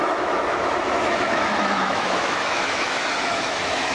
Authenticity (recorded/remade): remade